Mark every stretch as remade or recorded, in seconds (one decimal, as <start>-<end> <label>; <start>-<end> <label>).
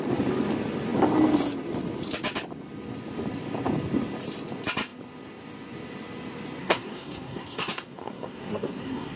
0.0-6.6 recorded; 6.6-9.2 remade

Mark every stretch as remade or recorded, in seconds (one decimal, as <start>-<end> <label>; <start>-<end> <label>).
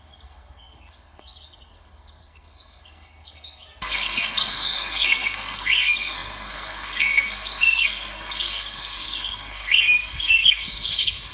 0.0-11.3 remade